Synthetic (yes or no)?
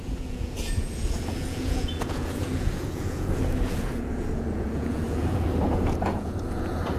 yes